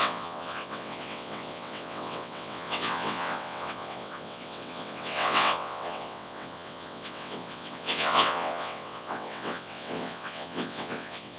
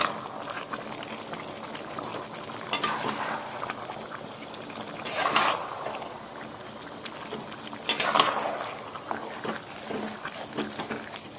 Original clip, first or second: second